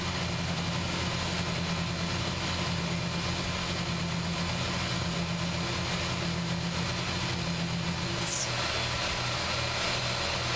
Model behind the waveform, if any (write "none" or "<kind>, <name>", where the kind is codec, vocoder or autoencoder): none